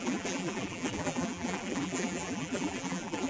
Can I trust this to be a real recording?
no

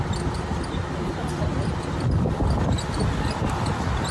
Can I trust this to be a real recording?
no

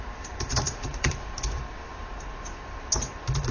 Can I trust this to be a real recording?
no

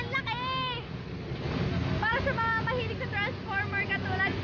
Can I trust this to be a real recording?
yes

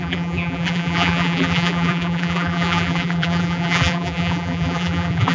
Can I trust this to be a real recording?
no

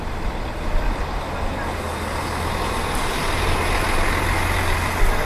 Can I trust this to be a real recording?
yes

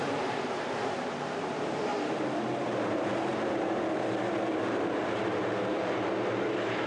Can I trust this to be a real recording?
no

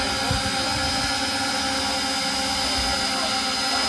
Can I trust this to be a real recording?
yes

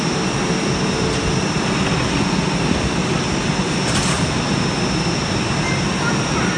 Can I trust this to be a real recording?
yes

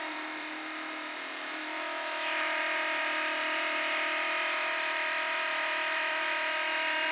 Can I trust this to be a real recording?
no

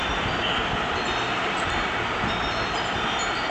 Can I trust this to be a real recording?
no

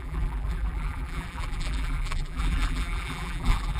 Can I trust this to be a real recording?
no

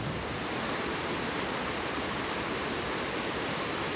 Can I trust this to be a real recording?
yes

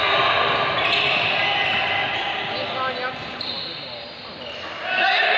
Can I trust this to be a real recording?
yes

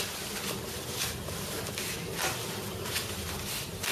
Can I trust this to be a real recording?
yes